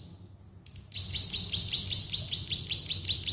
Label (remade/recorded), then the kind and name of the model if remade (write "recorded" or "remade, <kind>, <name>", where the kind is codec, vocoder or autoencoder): recorded